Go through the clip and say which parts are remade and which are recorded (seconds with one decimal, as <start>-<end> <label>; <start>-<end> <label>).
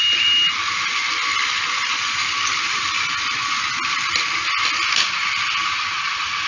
0.0-6.5 recorded